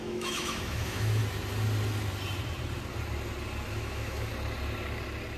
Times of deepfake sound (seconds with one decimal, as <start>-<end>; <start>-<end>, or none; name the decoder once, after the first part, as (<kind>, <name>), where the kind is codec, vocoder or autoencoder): 0.0-1.2 (autoencoder, DAC-VAE); 3.7-4.3